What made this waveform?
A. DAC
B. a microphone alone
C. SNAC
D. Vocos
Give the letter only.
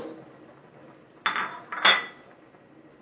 B